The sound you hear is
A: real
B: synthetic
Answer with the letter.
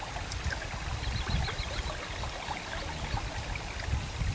A